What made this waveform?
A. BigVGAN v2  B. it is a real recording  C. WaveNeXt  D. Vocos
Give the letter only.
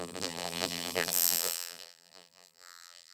A